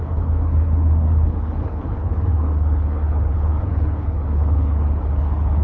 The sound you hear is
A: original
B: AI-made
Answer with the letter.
B